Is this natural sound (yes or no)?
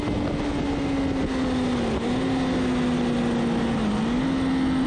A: yes